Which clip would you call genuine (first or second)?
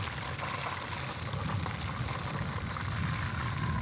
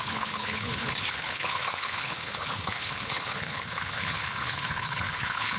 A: first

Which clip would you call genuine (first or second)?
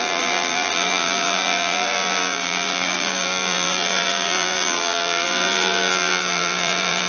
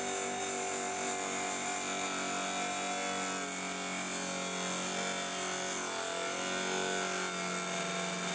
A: second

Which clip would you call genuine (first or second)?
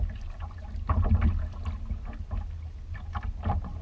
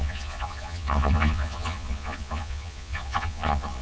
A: first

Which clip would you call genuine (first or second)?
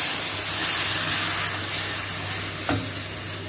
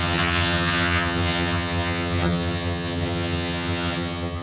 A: first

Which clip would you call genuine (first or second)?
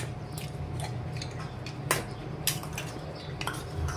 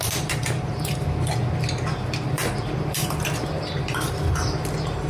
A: first